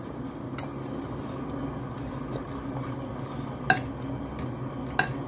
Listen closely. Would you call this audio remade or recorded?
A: recorded